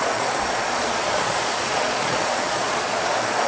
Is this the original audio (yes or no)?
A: no